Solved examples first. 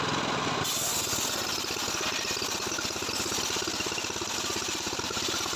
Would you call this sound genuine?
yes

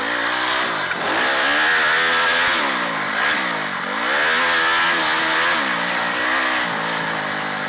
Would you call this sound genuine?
yes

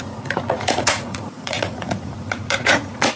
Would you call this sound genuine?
no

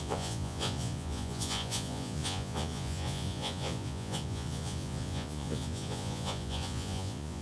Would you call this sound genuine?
no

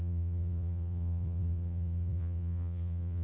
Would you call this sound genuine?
no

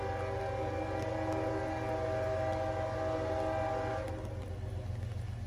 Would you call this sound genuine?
yes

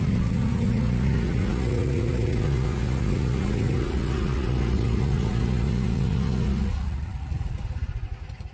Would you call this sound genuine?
no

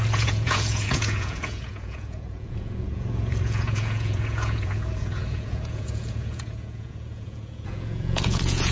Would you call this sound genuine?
no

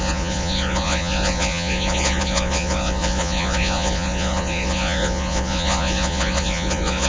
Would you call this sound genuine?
no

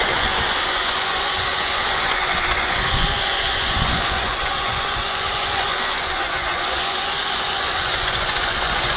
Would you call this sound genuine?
no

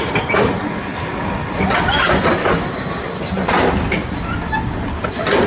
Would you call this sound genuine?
yes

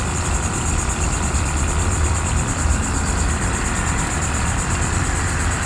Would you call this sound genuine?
yes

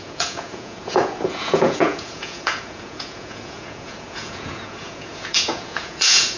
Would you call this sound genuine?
no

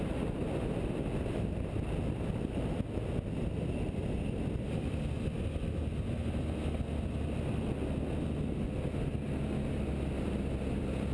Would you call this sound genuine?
yes